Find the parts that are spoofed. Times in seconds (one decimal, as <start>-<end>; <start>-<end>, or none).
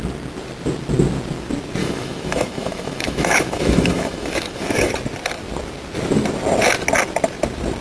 1.8-4.9